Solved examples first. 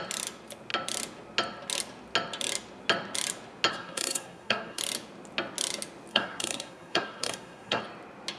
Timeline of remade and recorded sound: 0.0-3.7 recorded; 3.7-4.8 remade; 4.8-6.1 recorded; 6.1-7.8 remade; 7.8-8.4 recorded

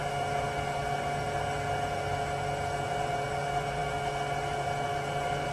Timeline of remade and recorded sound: 0.0-3.3 recorded; 3.3-3.8 remade; 3.8-4.9 recorded; 4.9-5.5 remade